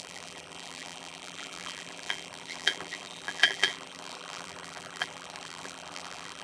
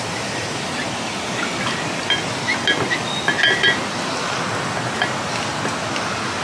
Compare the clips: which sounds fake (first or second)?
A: first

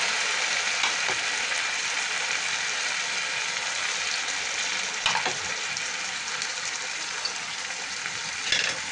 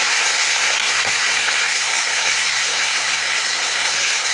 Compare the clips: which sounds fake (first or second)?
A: second